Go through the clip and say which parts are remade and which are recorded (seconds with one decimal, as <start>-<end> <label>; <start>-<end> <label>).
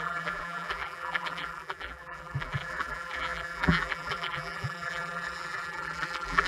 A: 0.0-6.5 remade